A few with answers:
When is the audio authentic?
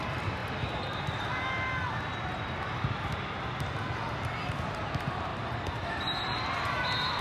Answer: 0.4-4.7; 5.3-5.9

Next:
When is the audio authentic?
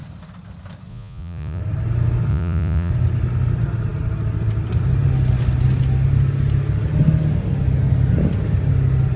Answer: 0.0-0.9; 1.6-2.3; 2.9-9.2